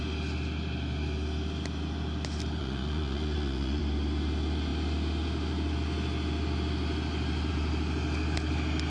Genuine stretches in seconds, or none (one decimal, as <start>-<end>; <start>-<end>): 0.0-2.6; 3.8-8.9